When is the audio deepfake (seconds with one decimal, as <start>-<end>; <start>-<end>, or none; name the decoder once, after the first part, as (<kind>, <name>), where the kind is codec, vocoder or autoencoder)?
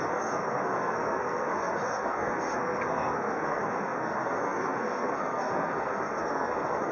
0.0-6.9 (codec, SNAC)